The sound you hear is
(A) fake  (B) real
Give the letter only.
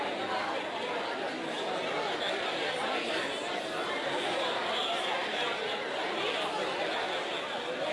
B